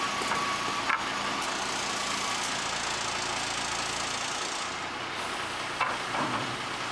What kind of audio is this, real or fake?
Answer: real